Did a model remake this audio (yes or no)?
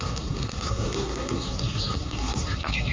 yes